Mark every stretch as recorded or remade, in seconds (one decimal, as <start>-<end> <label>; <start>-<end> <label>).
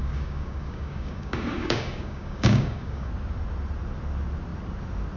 0.0-3.1 remade; 3.1-5.2 recorded